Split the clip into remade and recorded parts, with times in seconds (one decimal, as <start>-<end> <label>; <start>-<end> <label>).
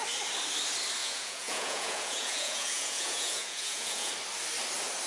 0.0-1.0 recorded; 1.0-4.1 remade; 4.1-5.1 recorded